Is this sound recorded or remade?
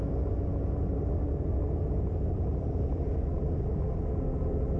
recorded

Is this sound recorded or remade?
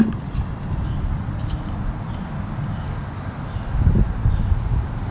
recorded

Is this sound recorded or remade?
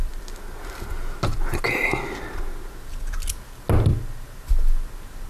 recorded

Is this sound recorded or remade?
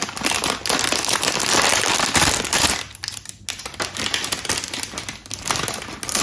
recorded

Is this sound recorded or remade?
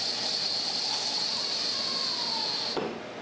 recorded